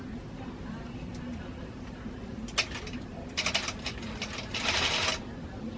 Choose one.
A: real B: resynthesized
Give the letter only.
A